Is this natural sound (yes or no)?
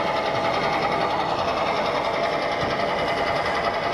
yes